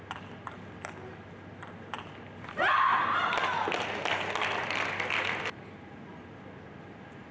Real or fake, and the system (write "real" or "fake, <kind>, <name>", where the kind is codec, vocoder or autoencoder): real